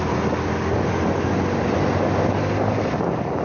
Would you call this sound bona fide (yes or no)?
yes